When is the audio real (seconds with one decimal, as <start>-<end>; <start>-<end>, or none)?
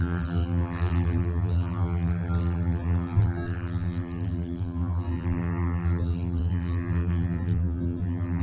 none